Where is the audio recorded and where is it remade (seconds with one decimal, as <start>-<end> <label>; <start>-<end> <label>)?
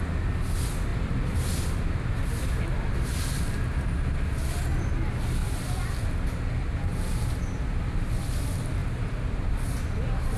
0.0-10.4 recorded